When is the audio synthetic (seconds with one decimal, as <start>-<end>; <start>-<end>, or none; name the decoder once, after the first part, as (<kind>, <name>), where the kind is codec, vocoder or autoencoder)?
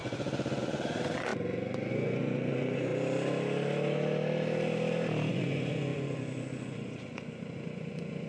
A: 0.0-2.9 (vocoder, Vocos); 5.3-8.3